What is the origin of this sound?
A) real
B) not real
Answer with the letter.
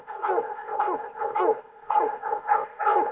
B